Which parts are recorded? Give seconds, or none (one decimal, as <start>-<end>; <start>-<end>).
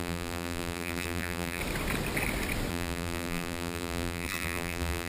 1.6-2.7